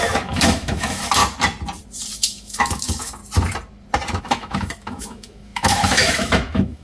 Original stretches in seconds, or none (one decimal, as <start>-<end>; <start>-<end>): 1.2-2.1; 3.2-4.2